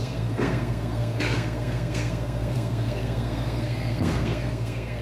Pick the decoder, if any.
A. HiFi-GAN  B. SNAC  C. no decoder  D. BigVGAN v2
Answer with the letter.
B